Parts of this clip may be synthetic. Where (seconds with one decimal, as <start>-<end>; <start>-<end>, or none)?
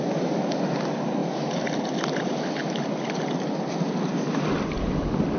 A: none